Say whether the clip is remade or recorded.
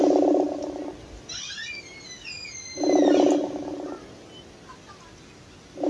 recorded